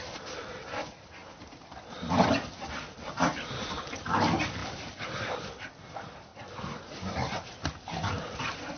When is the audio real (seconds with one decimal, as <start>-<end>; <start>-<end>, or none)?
0.0-4.6; 5.2-6.3